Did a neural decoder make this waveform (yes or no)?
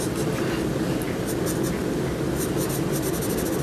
no